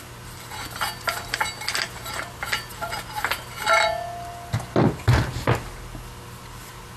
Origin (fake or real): real